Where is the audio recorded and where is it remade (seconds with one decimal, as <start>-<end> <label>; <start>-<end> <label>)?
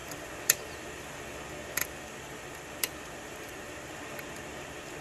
0.0-1.4 remade; 1.4-1.8 recorded; 1.8-3.7 remade; 3.7-5.0 recorded